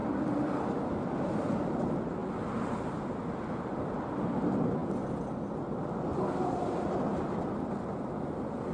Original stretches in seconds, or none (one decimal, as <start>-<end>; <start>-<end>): 0.0-8.7